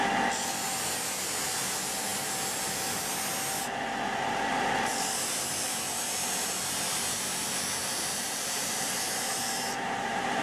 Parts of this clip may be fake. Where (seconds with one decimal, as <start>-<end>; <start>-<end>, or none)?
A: 7.8-10.4